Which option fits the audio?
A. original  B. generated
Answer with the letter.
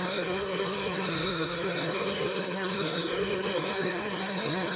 B